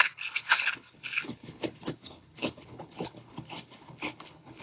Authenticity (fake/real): fake